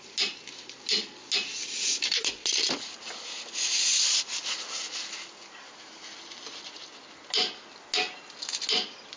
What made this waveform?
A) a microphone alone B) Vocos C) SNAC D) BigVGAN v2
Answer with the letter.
A